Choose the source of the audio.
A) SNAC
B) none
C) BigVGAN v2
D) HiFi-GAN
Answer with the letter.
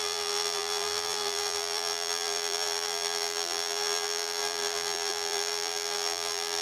C